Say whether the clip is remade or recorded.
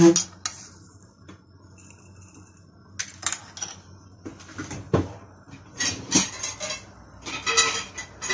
recorded